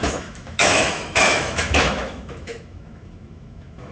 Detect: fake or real fake